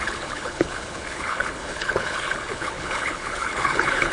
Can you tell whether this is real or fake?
fake